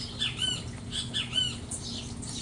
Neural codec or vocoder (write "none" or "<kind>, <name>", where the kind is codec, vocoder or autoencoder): none